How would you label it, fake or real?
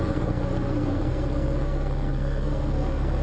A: fake